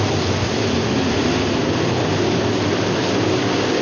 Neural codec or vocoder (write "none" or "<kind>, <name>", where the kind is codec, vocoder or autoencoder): none